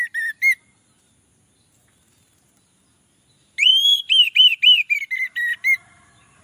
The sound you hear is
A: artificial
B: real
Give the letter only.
B